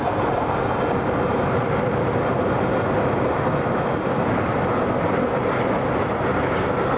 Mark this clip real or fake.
real